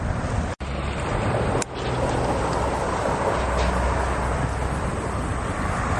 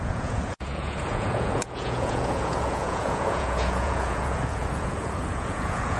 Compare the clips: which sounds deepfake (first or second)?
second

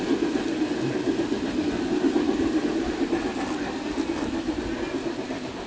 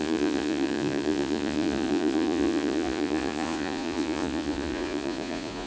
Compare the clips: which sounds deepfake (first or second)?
second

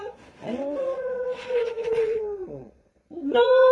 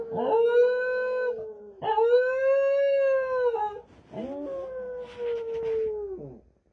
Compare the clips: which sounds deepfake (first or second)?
first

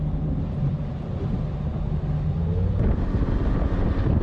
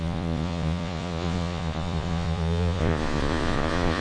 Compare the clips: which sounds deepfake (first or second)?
second